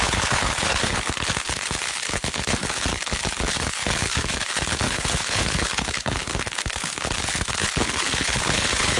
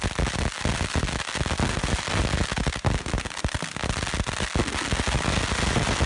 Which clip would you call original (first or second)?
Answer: second